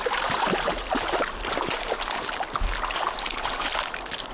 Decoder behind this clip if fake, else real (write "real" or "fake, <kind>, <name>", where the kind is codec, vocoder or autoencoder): real